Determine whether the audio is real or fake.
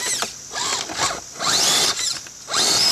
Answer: real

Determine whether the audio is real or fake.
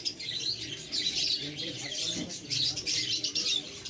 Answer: fake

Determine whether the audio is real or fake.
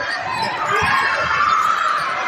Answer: fake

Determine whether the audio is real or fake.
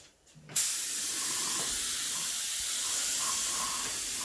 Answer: real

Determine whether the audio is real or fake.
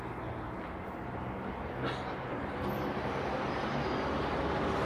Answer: real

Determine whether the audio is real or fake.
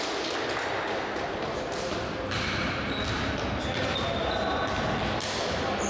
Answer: real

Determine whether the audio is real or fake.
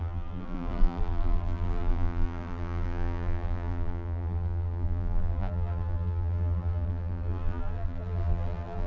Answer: fake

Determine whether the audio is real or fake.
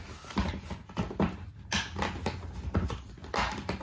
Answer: real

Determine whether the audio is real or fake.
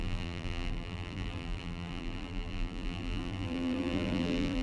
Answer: fake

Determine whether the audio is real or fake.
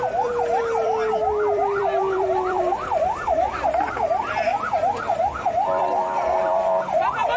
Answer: fake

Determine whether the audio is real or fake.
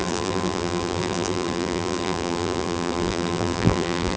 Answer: fake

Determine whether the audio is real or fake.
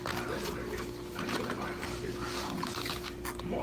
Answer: real